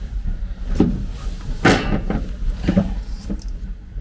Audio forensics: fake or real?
real